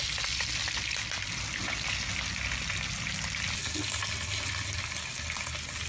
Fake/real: real